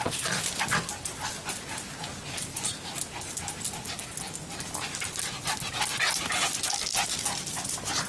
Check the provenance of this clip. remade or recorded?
recorded